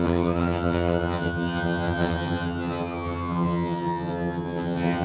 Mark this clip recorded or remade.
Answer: remade